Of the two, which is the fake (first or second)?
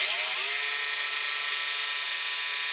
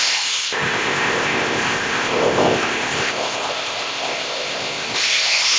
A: second